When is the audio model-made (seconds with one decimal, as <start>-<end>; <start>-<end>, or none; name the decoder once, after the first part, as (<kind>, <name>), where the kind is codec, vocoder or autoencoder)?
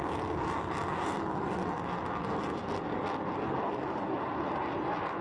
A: none